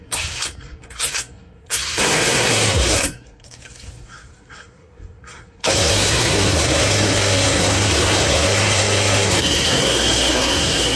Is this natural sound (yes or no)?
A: no